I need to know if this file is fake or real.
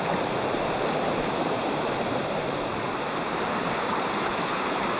fake